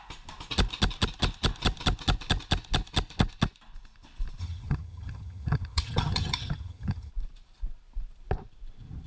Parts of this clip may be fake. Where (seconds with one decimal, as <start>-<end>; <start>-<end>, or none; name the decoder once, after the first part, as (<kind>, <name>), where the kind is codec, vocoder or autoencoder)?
4.4-7.1 (vocoder, HiFi-GAN)